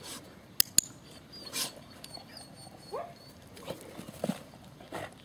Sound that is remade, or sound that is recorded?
recorded